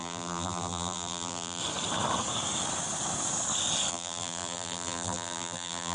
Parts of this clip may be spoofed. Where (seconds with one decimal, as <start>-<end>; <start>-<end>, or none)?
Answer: 0.0-1.6; 3.9-5.9